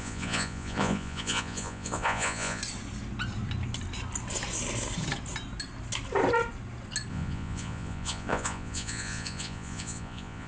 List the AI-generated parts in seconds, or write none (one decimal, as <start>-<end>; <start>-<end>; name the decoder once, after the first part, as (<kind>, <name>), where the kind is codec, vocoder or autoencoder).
0.0-2.6 (vocoder, Vocos); 7.1-10.5